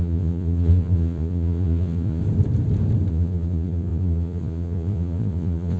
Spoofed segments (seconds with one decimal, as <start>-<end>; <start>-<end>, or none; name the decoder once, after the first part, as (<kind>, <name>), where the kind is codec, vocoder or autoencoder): 0.0-2.2 (vocoder, Vocos); 3.1-5.8